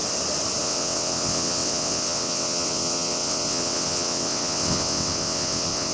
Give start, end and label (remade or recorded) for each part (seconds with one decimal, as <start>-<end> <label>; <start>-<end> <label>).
0.0-0.6 recorded; 0.6-5.9 remade